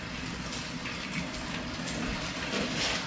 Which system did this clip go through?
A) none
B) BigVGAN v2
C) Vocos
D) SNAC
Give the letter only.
A